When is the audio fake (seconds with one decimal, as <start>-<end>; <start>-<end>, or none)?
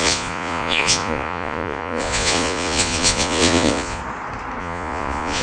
0.0-4.0; 4.6-5.4